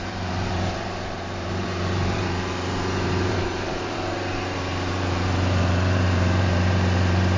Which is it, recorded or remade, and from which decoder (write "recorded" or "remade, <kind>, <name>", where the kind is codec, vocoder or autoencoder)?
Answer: remade, vocoder, BigVGAN v2